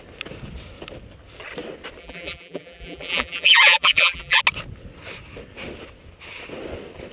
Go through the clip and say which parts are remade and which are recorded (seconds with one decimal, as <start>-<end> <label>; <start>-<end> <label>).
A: 0.0-2.0 recorded; 2.0-4.4 remade; 4.4-7.1 recorded